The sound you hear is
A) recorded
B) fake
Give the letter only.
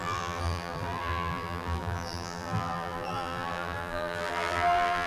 B